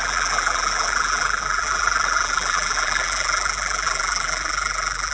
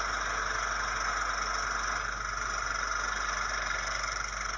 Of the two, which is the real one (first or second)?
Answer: second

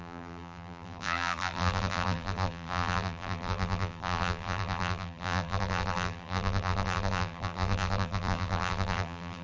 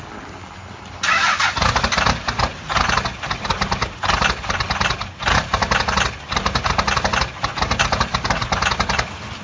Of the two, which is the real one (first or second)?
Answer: second